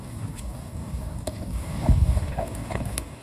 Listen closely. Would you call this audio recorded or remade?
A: remade